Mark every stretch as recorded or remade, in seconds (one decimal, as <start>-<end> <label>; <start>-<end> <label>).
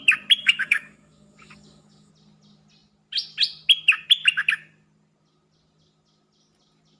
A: 0.0-0.4 recorded; 0.4-2.1 remade; 2.1-7.0 recorded